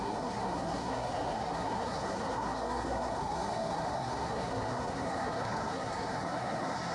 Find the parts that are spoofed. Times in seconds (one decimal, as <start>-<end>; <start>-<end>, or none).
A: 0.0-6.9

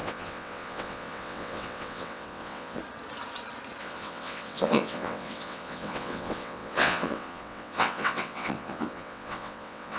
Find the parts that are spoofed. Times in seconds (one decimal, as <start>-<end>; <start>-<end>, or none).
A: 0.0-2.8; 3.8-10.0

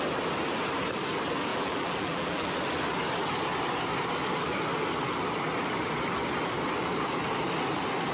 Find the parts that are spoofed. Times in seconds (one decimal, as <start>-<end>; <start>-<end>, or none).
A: 1.5-2.5